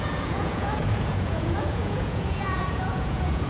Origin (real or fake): fake